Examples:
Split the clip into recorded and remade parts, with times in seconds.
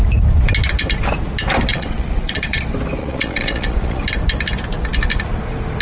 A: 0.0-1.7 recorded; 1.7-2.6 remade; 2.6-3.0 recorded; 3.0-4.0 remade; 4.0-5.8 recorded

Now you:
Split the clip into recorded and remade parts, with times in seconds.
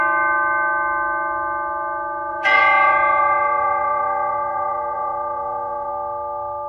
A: 0.0-2.3 recorded; 2.3-5.9 remade; 5.9-6.7 recorded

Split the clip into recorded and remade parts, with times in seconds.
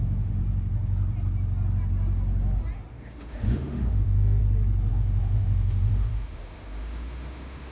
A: 0.0-0.4 remade; 0.4-2.9 recorded; 2.9-4.4 remade; 4.4-4.9 recorded; 4.9-7.7 remade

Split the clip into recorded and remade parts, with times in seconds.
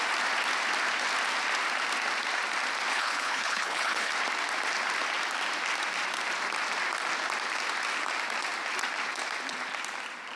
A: 0.0-2.9 recorded; 2.9-4.1 remade; 4.1-10.4 recorded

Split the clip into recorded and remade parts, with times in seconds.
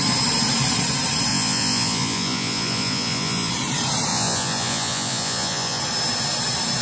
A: 0.0-1.3 recorded; 1.3-3.5 remade; 3.5-4.1 recorded; 4.1-5.8 remade; 5.8-6.8 recorded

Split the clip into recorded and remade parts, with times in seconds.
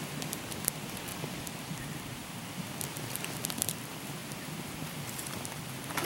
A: 0.0-1.1 remade; 1.1-1.7 recorded; 1.7-6.0 remade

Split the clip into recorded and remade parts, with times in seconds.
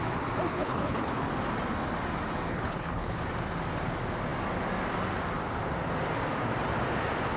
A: 0.0-0.5 recorded; 0.5-1.1 remade; 1.1-2.5 recorded; 2.5-3.2 remade; 3.2-7.4 recorded